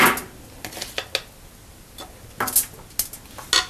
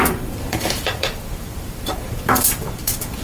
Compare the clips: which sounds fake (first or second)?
second